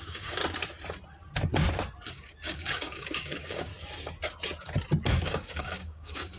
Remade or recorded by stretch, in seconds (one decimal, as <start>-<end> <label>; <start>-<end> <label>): 0.0-0.4 remade; 0.4-2.1 recorded; 2.1-3.7 remade; 3.7-5.1 recorded; 5.1-6.4 remade